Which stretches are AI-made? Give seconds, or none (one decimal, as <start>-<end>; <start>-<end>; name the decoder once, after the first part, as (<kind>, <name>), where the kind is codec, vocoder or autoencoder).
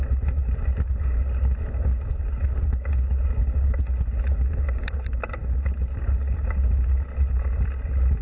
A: none